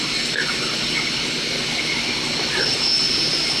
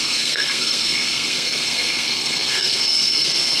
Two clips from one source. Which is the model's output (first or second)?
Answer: second